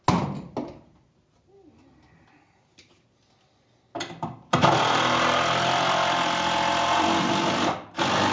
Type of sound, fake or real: real